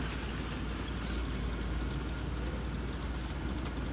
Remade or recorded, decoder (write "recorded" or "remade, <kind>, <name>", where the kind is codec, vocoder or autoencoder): recorded